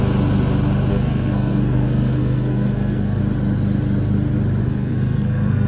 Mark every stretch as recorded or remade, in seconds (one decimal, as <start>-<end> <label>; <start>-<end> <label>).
0.0-0.9 recorded; 0.9-3.2 remade; 3.2-4.6 recorded; 4.6-5.7 remade